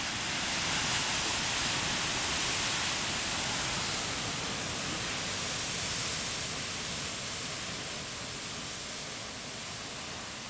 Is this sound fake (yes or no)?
no